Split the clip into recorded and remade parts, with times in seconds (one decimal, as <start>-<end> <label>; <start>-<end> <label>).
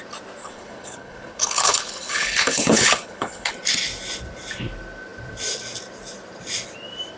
0.0-0.4 recorded; 0.4-3.5 remade; 3.5-7.2 recorded